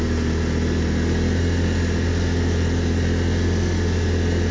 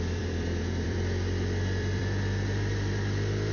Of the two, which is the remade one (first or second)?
second